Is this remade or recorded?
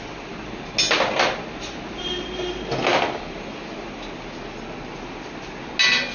recorded